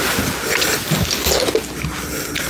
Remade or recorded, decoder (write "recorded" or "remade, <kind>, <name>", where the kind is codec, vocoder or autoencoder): recorded